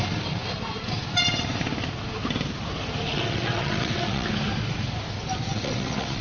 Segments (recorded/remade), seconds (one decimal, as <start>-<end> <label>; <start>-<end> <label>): 0.0-3.1 recorded; 3.1-4.3 remade; 4.3-5.5 recorded; 5.5-6.2 remade